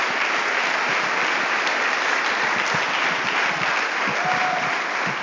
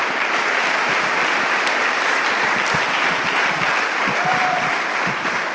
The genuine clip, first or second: first